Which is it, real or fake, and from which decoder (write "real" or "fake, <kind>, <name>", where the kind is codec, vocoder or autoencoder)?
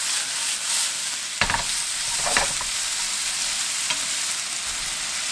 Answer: real